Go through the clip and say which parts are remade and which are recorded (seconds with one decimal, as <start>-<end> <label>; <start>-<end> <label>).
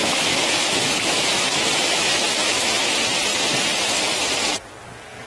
0.0-2.8 remade; 2.8-5.3 recorded